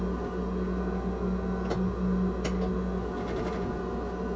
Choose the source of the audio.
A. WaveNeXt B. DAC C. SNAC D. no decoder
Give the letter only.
D